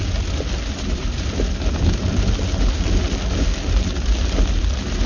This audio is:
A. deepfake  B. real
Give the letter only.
B